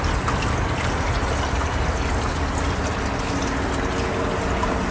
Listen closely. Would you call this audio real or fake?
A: real